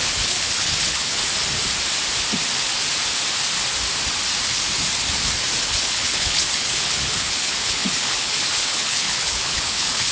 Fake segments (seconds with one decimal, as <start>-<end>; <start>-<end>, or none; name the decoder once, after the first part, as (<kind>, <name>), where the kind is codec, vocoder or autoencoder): 0.0-1.2 (codec, HILCodec); 5.6-10.1